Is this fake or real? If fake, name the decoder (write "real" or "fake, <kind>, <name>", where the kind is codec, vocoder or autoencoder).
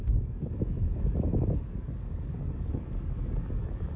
fake, codec, DAC